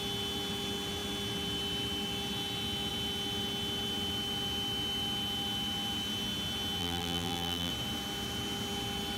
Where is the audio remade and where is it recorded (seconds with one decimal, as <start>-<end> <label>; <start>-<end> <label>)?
0.0-6.8 recorded; 6.8-7.7 remade; 7.7-9.2 recorded